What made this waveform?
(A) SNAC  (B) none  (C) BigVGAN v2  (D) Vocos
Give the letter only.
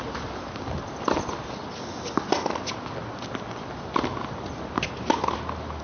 B